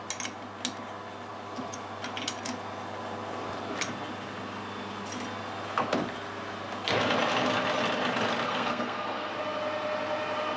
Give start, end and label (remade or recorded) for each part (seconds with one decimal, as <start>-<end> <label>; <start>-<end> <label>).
0.0-8.5 recorded; 8.5-9.3 remade; 9.3-10.6 recorded